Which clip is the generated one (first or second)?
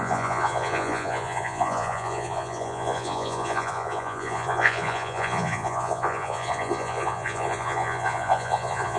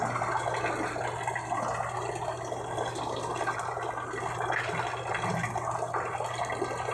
first